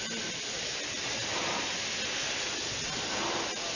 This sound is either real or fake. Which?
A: real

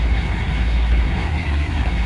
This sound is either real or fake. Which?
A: fake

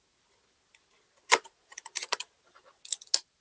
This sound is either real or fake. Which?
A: real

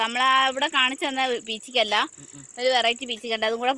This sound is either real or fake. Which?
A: real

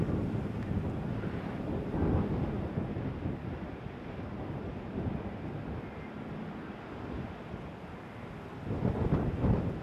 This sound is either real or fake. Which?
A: real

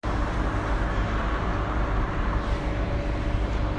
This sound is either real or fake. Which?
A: real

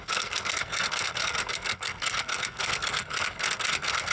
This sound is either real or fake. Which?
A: fake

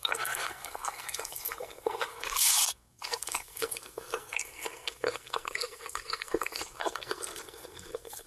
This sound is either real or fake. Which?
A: fake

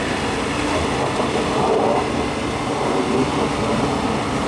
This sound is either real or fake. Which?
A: real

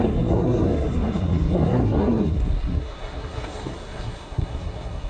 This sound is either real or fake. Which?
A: fake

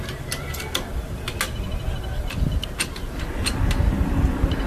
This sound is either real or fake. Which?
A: real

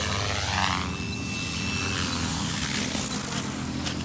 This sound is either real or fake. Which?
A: real